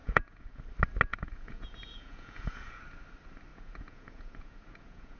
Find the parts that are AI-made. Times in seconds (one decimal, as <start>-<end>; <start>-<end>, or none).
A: 0.0-0.6; 1.1-2.8; 3.5-5.2